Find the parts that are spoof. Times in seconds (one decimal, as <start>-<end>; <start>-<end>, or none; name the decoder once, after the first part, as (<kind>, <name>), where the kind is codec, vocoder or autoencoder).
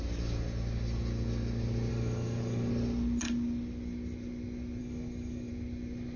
1.9-2.7 (codec, DAC); 4.8-5.5